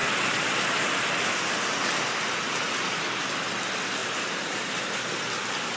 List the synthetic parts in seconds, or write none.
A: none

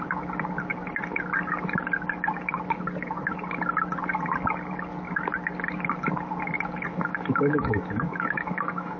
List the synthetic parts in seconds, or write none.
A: 6.9-9.0

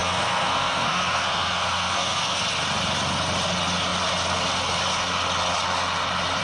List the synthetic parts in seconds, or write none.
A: 0.0-2.4

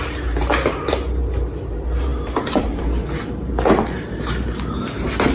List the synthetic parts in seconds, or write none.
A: 0.0-5.3